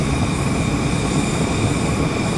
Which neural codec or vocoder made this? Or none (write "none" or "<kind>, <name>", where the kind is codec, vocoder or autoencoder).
vocoder, BigVGAN v2